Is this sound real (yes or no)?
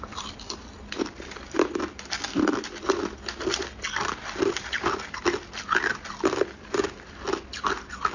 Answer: yes